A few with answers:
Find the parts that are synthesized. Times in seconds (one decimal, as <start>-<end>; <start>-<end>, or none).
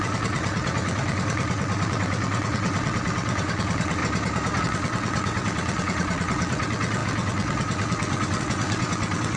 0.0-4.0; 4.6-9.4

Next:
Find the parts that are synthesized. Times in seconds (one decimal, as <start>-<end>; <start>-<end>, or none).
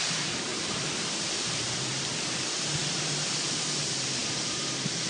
0.5-2.0; 2.8-3.5; 4.2-5.1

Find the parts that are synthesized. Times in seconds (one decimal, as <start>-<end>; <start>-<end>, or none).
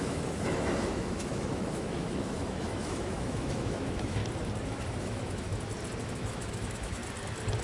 0.0-4.2; 5.0-5.5; 6.0-7.0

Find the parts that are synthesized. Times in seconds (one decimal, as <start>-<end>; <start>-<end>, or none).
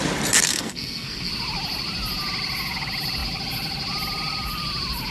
0.5-1.3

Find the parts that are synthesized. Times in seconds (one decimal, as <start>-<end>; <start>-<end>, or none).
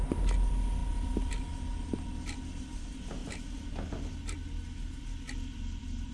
none